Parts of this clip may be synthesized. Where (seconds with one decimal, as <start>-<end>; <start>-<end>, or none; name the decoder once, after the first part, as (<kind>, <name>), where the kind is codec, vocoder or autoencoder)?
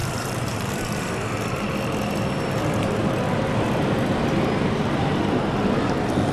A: 0.0-0.7 (vocoder, BigVGAN v2)